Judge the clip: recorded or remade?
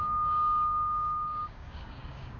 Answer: remade